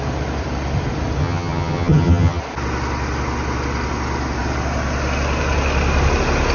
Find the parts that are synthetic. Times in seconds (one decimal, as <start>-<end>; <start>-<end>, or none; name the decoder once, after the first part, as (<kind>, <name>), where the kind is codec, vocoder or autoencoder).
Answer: 1.2-2.4 (vocoder, HiFi-GAN)